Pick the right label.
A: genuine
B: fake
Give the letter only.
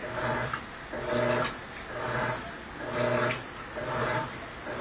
A